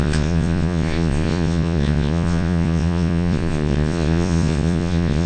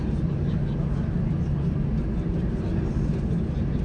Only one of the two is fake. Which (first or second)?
first